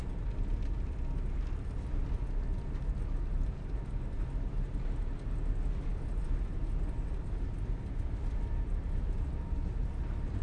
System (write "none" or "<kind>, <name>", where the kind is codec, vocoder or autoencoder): none